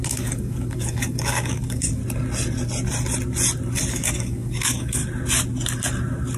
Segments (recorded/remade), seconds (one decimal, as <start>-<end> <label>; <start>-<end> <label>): 0.0-2.0 remade; 2.0-3.9 recorded; 3.9-5.0 remade; 5.0-6.4 recorded